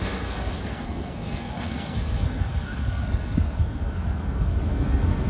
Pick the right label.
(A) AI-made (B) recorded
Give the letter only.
A